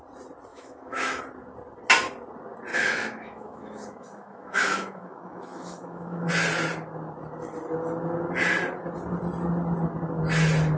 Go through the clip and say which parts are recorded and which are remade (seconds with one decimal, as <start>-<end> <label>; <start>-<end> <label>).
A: 0.0-0.5 recorded; 0.5-1.2 remade; 1.2-2.7 recorded; 2.7-6.3 remade; 6.3-10.8 recorded

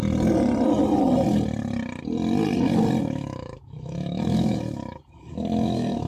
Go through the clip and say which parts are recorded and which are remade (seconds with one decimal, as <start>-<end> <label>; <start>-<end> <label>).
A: 0.0-3.0 recorded; 3.0-6.1 remade